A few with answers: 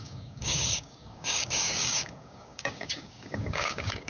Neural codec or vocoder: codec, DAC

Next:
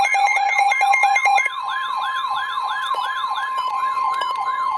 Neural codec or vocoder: vocoder, Vocos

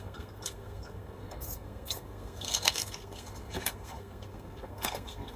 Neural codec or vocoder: codec, SNAC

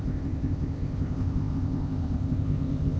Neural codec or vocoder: codec, ZipCodec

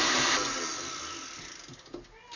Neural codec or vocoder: none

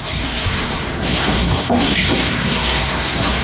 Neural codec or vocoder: codec, SNAC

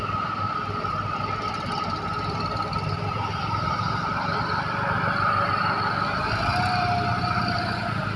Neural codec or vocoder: none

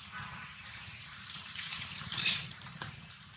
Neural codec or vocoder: vocoder, BigVGAN v2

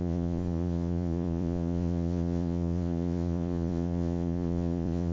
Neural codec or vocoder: vocoder, Vocos